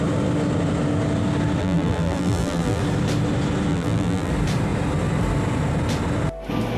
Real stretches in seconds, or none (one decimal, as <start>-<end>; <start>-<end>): 0.0-1.6; 2.8-3.7; 4.3-6.8

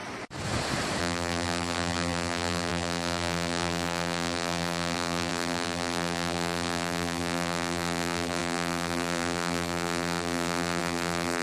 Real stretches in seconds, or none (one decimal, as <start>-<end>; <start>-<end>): 0.0-1.0

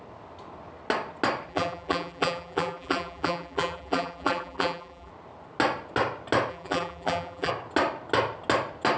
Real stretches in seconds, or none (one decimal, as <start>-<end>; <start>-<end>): 0.0-1.5; 5.1-6.5; 7.5-9.0

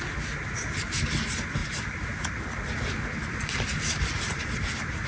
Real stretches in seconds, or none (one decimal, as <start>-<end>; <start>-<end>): 0.0-1.6

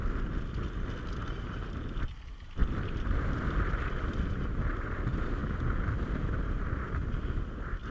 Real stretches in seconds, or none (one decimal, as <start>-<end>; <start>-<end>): 0.0-2.6; 4.3-5.4; 6.8-7.9

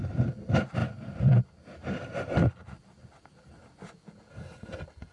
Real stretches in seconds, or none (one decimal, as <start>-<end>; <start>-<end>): 0.0-0.8; 3.9-5.1

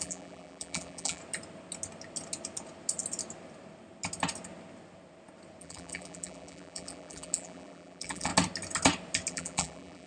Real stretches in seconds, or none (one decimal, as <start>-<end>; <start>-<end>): 1.2-5.6; 8.3-9.3

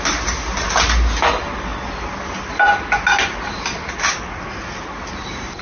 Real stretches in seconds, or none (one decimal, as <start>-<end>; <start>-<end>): 0.0-5.6